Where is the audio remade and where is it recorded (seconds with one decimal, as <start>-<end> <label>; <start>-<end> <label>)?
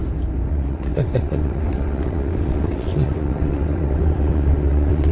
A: 0.0-0.5 recorded; 0.5-5.1 remade